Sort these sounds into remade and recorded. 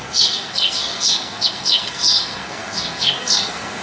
remade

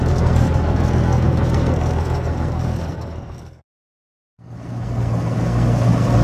remade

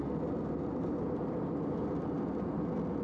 recorded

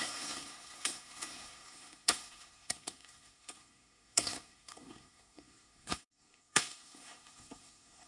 remade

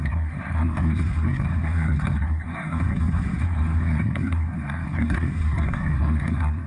remade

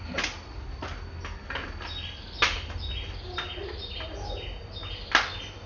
recorded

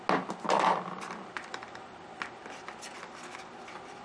recorded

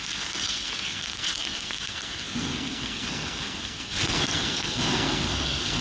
remade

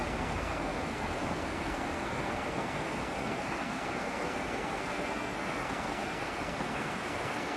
remade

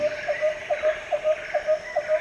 recorded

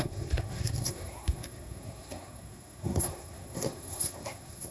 remade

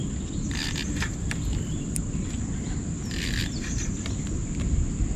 recorded